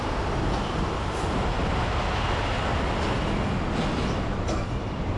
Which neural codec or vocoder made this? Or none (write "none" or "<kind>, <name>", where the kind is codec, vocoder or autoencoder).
none